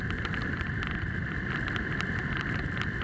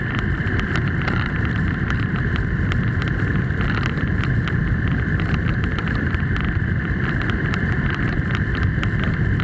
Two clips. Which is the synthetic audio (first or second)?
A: second